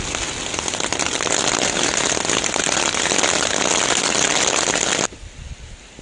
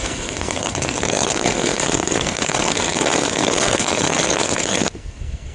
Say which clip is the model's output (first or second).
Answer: second